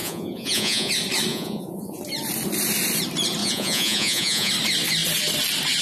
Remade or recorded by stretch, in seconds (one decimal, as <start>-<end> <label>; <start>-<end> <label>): 0.0-0.9 remade; 0.9-1.3 recorded; 1.3-2.0 remade; 2.0-3.4 recorded; 3.4-4.5 remade; 4.5-5.8 recorded